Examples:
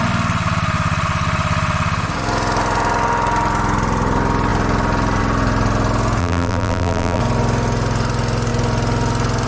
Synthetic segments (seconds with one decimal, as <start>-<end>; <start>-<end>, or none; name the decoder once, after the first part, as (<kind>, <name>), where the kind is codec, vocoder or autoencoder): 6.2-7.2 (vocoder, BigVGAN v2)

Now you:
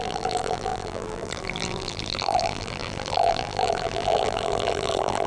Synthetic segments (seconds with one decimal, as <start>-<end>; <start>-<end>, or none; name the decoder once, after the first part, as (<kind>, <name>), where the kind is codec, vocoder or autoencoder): 0.0-5.3 (vocoder, BigVGAN v2)

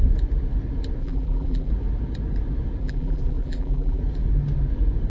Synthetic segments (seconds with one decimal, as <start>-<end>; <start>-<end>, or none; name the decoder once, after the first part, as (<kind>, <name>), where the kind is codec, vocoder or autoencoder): 1.0-1.7 (vocoder, BigVGAN v2); 2.8-4.0

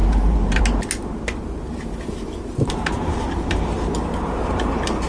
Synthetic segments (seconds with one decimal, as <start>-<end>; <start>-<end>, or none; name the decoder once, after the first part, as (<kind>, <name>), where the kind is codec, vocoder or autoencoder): 0.0-0.6 (vocoder, BigVGAN v2); 1.7-5.1

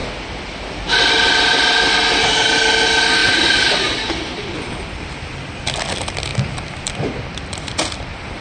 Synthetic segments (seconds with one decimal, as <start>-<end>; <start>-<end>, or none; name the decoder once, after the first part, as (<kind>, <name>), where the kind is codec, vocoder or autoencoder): 0.0-1.1 (vocoder, BigVGAN v2); 3.2-5.5; 6.3-8.4